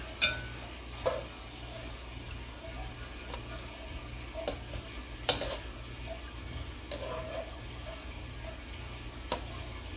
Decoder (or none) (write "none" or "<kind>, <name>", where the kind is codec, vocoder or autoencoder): none